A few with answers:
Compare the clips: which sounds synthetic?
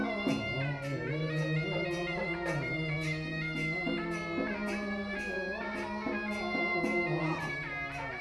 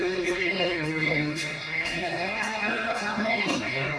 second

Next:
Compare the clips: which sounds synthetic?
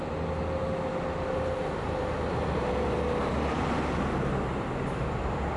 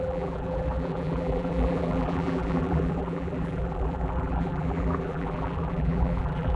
second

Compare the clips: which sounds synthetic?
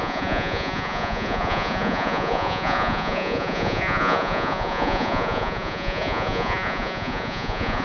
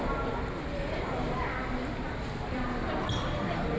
first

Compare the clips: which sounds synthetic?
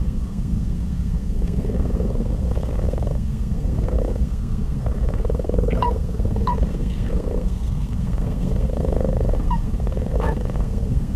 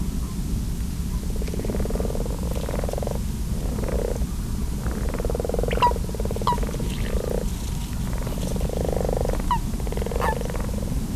first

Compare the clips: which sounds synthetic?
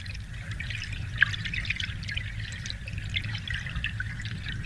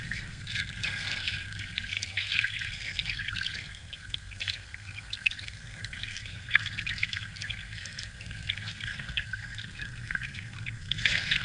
second